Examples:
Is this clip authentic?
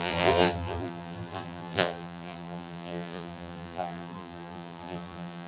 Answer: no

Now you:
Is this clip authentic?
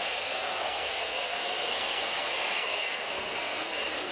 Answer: no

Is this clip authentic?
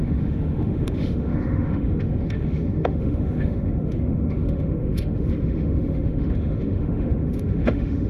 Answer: no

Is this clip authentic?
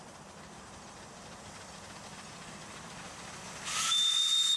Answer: yes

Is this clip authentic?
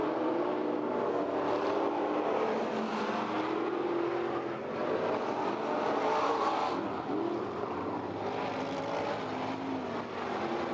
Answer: yes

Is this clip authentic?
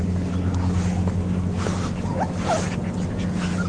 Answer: yes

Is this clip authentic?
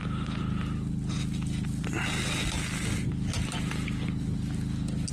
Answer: yes